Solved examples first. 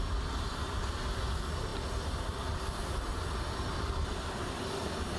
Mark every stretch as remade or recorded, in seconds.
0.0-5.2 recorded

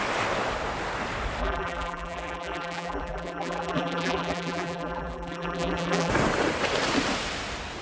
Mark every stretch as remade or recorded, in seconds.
0.0-1.4 recorded; 1.4-6.1 remade; 6.1-7.8 recorded

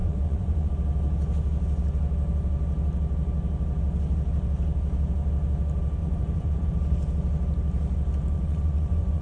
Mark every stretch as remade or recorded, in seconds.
0.0-0.7 remade; 0.7-6.0 recorded; 6.0-6.7 remade; 6.7-8.3 recorded; 8.3-9.2 remade

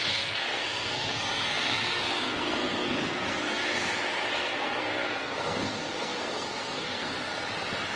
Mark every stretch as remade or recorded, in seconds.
0.0-3.6 remade; 3.6-4.3 recorded; 4.3-7.3 remade; 7.3-8.0 recorded

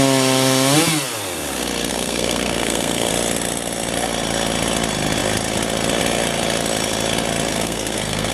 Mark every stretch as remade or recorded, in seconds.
0.0-1.9 recorded; 1.9-3.1 remade; 3.1-7.5 recorded; 7.5-8.3 remade

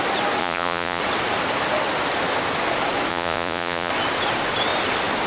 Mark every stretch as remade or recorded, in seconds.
0.0-0.4 recorded; 0.4-1.0 remade; 1.0-3.1 recorded; 3.1-3.9 remade; 3.9-5.3 recorded

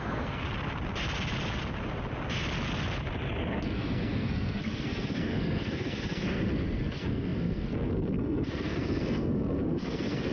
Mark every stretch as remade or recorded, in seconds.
0.0-0.4 remade; 0.4-3.5 recorded; 3.5-10.3 remade

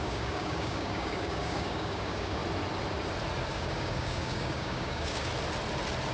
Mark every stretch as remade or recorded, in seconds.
0.0-2.4 remade; 2.4-3.5 recorded; 3.5-5.3 remade; 5.3-6.1 recorded